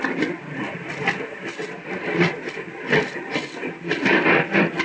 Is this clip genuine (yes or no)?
yes